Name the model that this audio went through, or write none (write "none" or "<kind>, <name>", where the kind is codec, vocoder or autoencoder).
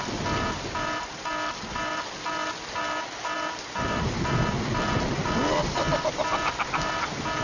none